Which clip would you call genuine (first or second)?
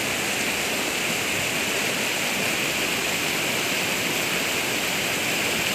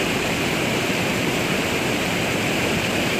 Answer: first